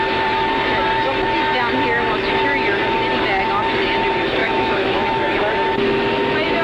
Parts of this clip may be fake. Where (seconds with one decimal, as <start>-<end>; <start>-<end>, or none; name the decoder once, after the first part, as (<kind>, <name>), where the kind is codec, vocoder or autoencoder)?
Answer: 4.4-5.4 (autoencoder, DAC-VAE)